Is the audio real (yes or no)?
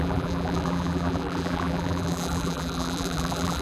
no